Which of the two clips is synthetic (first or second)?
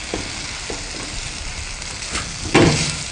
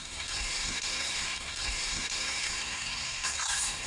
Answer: second